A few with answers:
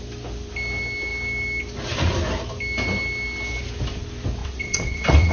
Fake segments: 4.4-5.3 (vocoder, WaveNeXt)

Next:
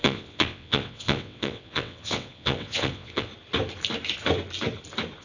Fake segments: 0.0-3.3 (vocoder, WaveNeXt)

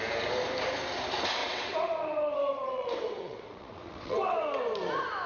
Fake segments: 1.4-4.6 (vocoder, WaveNeXt)

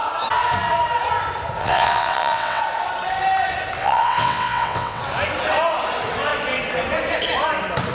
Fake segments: 1.6-2.6 (vocoder, WaveNeXt); 3.8-5.0

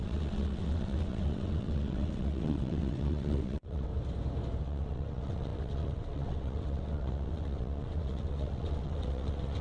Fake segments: 0.0-3.9 (vocoder, WaveNeXt); 4.6-9.6

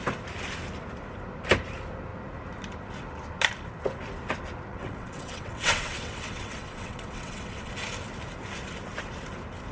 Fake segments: 4.7-7.7 (vocoder, WaveNeXt)

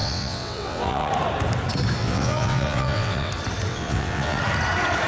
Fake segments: 0.0-1.1 (vocoder, WaveNeXt); 2.0-3.3; 3.7-4.4

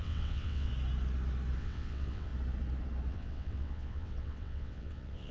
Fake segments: 0.0-0.7 (vocoder, WaveNeXt); 1.6-2.3; 3.1-5.3